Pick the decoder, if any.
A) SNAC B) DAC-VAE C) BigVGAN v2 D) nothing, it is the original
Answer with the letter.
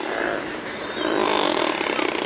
D